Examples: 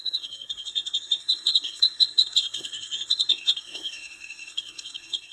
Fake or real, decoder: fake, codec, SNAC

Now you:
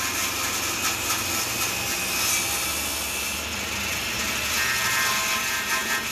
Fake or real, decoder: real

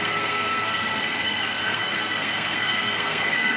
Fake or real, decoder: fake, codec, SNAC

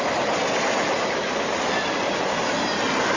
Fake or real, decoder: real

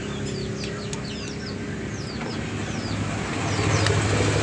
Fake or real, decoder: real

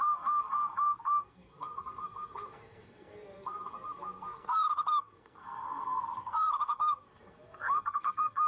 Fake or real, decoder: fake, codec, SNAC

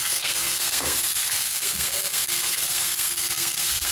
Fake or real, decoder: fake, codec, SNAC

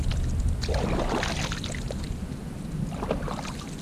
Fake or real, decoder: real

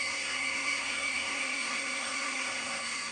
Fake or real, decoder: fake, codec, SNAC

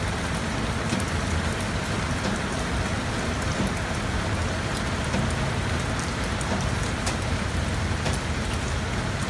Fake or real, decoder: real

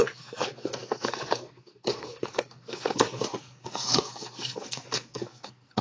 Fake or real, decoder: fake, codec, SNAC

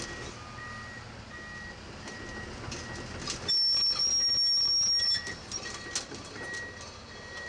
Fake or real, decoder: real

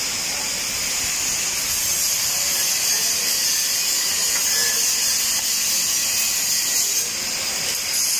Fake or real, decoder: real